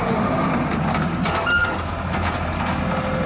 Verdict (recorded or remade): recorded